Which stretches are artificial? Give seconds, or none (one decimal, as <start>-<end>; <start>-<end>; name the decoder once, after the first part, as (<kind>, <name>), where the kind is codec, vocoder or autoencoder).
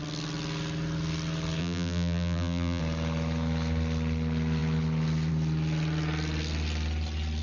1.6-2.8 (vocoder, BigVGAN v2)